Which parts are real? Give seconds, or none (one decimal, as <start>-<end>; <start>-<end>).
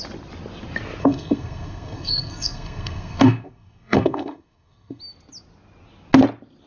0.0-1.0; 5.0-6.7